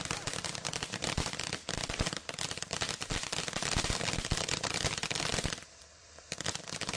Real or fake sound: fake